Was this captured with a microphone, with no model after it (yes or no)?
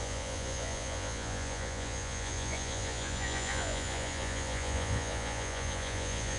no